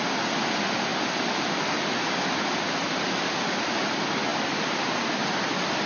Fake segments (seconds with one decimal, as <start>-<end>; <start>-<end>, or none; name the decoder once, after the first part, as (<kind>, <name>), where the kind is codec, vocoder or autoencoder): 0.9-3.0 (vocoder, BigVGAN v2); 4.3-5.1